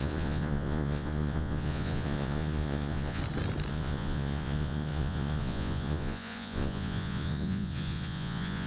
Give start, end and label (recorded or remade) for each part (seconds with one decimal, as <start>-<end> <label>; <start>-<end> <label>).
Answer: 0.0-3.2 remade; 3.2-3.7 recorded; 3.7-8.7 remade